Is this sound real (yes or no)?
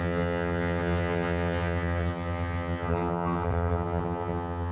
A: no